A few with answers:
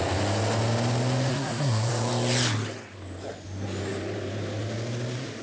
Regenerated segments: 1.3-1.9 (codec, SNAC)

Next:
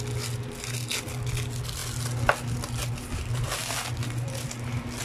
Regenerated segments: none

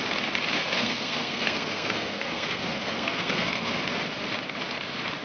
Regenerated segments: 0.6-3.7 (codec, SNAC)